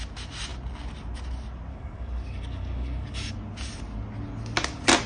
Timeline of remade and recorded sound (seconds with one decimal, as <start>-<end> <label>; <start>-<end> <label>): 0.0-1.7 recorded; 1.7-3.3 remade; 3.3-5.1 recorded